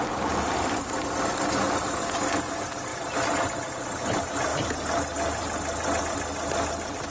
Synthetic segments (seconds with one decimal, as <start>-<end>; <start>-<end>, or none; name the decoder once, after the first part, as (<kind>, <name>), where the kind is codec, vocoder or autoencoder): none